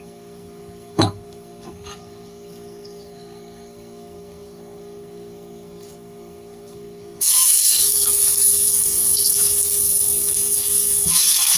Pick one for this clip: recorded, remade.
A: remade